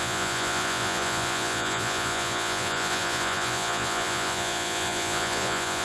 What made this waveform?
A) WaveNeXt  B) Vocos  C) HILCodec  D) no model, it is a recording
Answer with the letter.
B